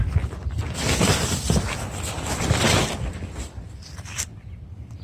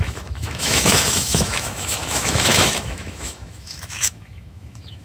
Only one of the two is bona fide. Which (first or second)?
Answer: first